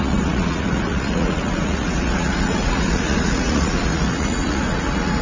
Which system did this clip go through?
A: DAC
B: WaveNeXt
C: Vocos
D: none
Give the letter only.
C